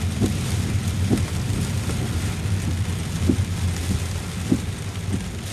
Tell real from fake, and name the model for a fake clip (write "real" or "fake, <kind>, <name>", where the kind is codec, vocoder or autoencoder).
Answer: real